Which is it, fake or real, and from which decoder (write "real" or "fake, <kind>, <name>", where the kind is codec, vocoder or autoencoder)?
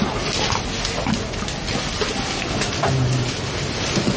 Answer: real